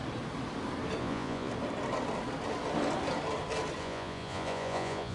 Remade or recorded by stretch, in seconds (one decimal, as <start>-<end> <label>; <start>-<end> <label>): 0.0-1.0 recorded; 1.0-1.5 remade; 1.5-3.8 recorded; 3.8-5.1 remade